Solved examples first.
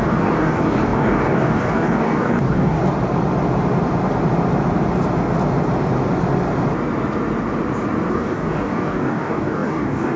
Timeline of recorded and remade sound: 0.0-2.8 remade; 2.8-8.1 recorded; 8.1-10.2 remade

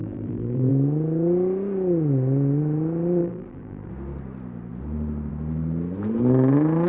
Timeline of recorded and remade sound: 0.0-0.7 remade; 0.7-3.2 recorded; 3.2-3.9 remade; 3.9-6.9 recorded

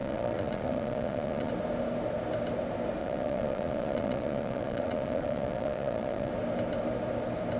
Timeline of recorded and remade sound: 0.0-1.5 remade; 1.5-3.0 recorded; 3.0-6.3 remade; 6.3-7.6 recorded

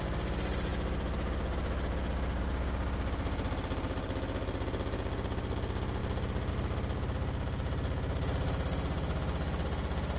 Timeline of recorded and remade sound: 0.0-10.2 recorded